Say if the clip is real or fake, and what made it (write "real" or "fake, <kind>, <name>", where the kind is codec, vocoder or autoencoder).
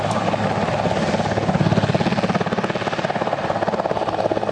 real